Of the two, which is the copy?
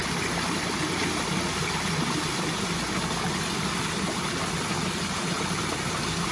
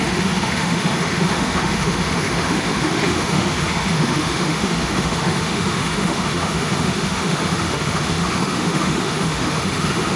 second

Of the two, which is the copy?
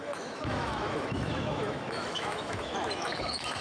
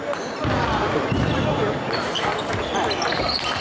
first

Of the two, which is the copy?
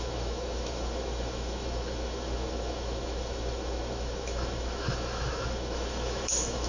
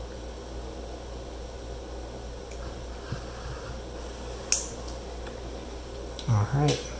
first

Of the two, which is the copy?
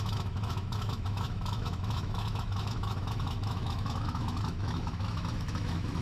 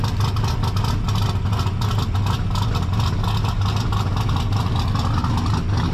first